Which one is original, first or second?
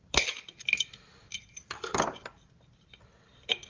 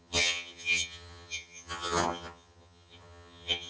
first